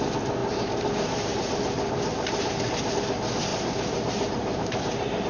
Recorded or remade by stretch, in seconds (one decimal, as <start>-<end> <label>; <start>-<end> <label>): 0.0-0.4 recorded; 0.4-2.9 remade; 2.9-3.5 recorded; 3.5-5.3 remade